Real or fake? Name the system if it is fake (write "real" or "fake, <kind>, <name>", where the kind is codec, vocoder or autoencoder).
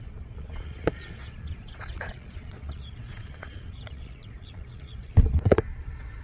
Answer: fake, vocoder, Vocos